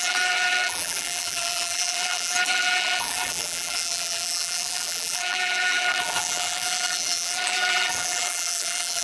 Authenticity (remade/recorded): remade